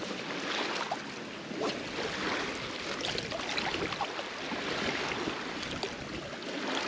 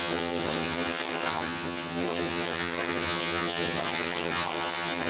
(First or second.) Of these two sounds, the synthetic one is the second